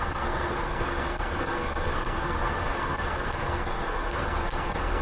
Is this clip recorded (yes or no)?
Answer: no